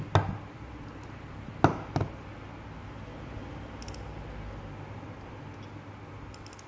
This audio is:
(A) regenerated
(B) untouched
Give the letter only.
B